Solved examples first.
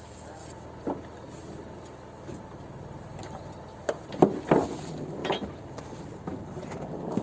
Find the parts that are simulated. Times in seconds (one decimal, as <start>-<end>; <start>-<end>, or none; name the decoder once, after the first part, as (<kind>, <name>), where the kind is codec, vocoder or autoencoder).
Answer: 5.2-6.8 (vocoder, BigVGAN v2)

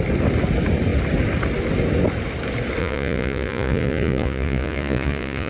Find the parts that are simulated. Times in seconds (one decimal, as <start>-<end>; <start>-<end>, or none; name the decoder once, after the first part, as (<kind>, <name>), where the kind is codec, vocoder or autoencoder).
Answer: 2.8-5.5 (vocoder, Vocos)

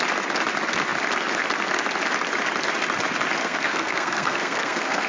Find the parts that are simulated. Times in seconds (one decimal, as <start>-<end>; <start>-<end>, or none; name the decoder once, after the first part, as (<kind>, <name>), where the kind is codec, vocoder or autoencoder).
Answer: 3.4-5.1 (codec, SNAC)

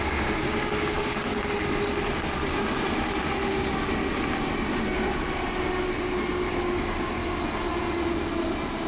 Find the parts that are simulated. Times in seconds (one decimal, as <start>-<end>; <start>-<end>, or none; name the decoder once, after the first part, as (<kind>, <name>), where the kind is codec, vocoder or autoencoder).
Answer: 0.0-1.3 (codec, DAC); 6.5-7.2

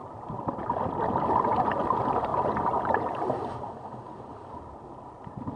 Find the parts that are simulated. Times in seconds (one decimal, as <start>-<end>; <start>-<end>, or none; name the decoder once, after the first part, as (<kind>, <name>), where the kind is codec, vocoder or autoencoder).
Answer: 2.3-3.7 (vocoder, BigVGAN v2)